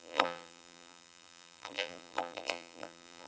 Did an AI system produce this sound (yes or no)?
yes